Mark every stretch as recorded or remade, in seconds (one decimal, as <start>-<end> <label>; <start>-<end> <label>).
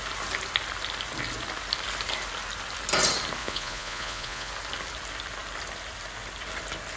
0.0-3.4 recorded; 3.4-4.5 remade; 4.5-7.0 recorded